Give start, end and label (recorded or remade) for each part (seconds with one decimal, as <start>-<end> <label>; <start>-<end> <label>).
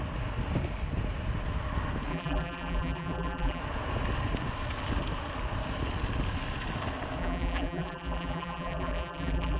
0.0-2.1 recorded; 2.1-3.6 remade; 3.6-7.2 recorded; 7.2-9.6 remade